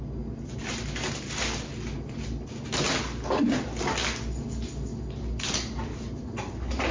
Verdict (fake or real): real